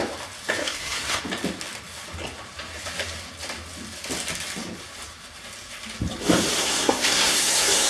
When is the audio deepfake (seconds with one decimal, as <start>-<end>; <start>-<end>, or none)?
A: 0.6-1.2; 6.6-7.9